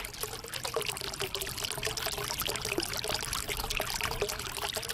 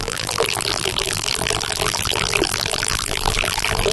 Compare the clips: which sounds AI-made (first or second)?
second